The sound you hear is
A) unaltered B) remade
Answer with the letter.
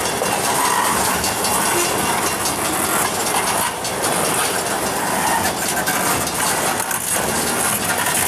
A